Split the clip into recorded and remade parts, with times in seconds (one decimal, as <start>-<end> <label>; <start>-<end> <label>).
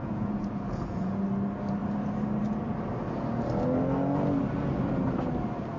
0.0-1.2 remade; 1.2-5.8 recorded